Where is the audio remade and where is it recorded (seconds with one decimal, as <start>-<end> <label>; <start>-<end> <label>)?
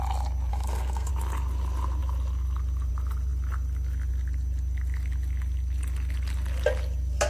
0.0-0.5 recorded; 0.5-1.1 remade; 1.1-7.3 recorded